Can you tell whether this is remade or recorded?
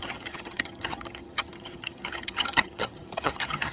remade